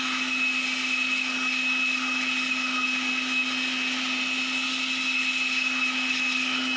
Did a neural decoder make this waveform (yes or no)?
no